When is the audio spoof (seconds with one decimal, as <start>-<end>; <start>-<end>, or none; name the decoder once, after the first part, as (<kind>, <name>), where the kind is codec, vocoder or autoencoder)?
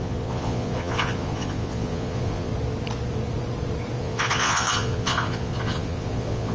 0.0-2.5 (vocoder, Vocos); 4.0-6.5